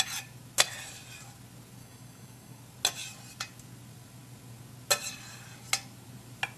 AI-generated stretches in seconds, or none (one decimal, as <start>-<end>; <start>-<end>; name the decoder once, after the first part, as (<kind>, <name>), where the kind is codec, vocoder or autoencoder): 1.8-2.6 (codec, DAC)